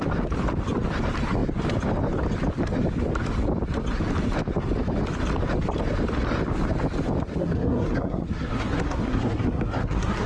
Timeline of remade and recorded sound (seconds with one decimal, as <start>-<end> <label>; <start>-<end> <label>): 0.0-7.4 recorded; 7.4-10.3 remade